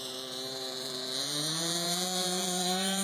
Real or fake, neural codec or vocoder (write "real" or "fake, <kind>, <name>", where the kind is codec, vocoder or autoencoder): fake, vocoder, BigVGAN v2